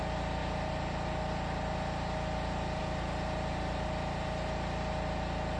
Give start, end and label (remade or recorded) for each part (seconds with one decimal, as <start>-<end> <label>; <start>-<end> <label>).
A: 0.0-5.6 recorded

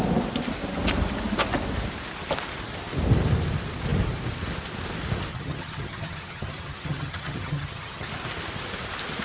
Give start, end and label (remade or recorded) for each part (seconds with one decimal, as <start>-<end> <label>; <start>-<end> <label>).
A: 0.0-5.3 recorded; 5.3-8.1 remade; 8.1-9.2 recorded

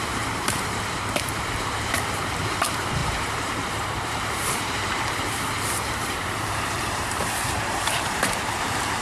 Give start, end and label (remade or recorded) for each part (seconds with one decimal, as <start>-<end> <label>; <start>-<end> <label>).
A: 0.0-9.0 remade

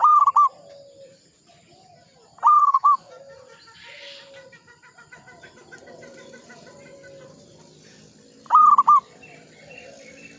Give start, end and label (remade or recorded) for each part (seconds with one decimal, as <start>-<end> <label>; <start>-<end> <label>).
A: 0.0-2.6 recorded; 2.6-3.1 remade; 3.1-10.4 recorded

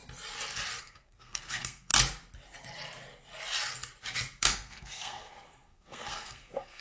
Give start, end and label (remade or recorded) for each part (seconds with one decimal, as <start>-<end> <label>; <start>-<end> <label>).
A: 0.0-0.8 recorded; 0.8-1.9 remade; 1.9-4.4 recorded; 4.4-6.8 remade

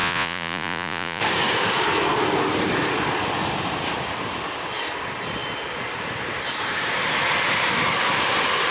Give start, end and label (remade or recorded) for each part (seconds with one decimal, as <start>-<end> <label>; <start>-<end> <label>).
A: 0.0-1.2 remade; 1.2-8.7 recorded